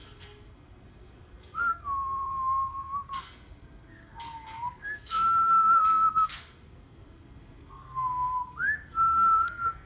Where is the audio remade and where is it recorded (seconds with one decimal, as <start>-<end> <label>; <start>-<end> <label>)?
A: 0.0-9.9 remade